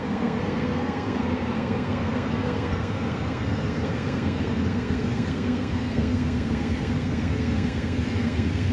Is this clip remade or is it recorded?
remade